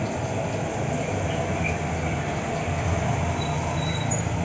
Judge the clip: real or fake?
real